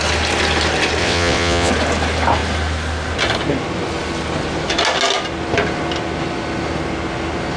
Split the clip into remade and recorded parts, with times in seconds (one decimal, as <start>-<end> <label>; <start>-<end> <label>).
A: 0.0-1.0 recorded; 1.0-1.7 remade; 1.7-7.6 recorded